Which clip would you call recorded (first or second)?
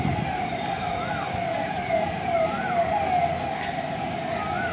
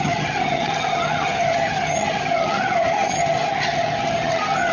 first